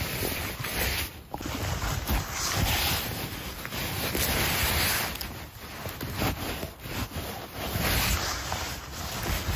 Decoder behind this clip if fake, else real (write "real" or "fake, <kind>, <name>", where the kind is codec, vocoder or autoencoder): fake, vocoder, BigVGAN v2